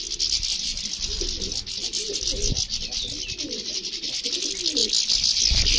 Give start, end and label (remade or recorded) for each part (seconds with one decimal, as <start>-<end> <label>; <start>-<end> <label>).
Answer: 0.0-0.7 recorded; 0.7-4.2 remade; 4.2-5.8 recorded